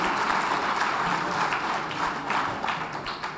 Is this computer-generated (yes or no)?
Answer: no